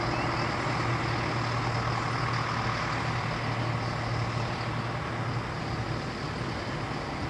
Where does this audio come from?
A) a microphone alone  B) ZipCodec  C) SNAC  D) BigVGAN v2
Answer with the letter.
A